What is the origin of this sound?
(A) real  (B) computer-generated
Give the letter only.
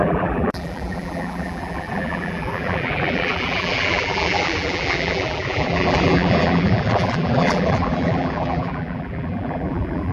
B